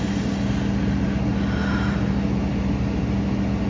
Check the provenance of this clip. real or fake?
real